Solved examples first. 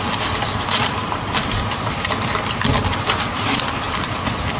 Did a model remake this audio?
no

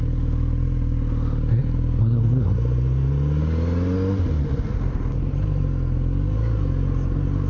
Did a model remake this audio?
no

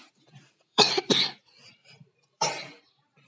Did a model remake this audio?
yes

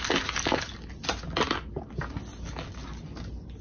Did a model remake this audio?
no